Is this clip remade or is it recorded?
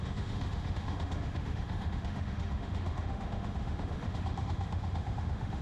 remade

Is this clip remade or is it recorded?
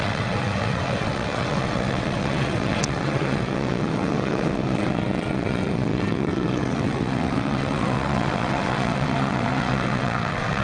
remade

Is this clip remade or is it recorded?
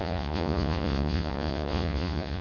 remade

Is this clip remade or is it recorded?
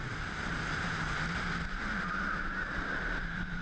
recorded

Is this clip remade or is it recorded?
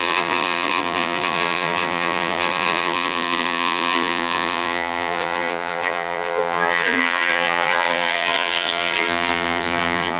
remade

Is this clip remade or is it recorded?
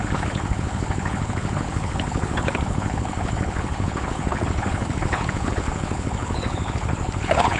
remade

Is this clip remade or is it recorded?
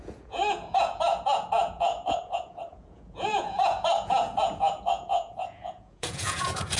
remade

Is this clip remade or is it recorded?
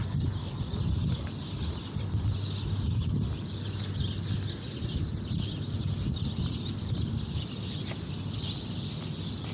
recorded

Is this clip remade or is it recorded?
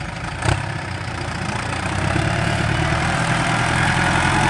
remade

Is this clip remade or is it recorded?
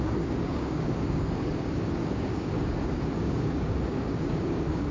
remade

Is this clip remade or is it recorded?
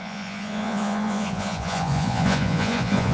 remade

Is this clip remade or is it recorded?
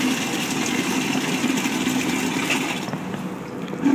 recorded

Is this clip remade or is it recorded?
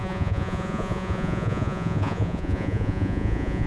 remade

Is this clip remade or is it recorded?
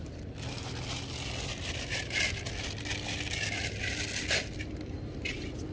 recorded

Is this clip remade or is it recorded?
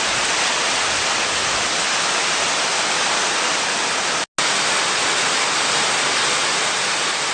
recorded